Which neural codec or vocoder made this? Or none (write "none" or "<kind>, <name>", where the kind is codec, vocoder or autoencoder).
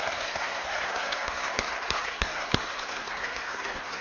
codec, SNAC